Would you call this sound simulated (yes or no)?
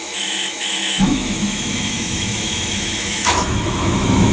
yes